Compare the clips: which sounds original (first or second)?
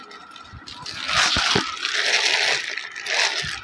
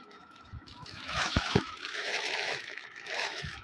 first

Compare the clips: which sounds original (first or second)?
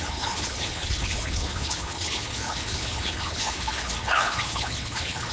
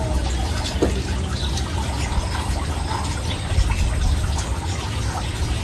second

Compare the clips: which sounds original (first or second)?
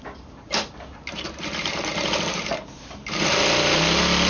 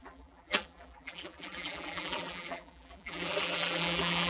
first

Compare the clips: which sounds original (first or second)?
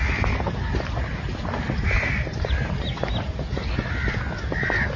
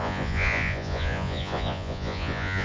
first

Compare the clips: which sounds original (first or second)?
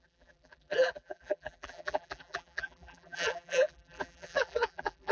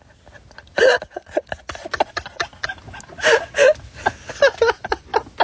second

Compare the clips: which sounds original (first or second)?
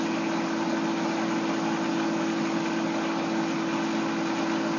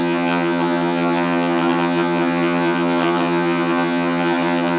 first